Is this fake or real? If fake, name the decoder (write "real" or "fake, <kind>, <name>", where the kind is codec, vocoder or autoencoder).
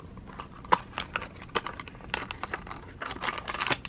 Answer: real